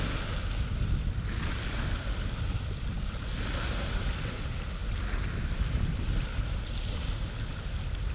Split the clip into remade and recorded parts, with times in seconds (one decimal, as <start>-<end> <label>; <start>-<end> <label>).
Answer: 0.0-8.1 recorded